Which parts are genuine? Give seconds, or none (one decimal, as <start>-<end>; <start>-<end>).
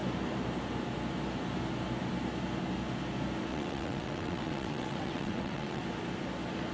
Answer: 0.0-3.5; 5.8-6.7